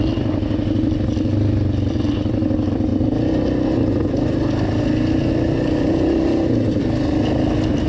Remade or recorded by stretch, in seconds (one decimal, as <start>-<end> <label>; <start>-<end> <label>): 0.0-7.9 recorded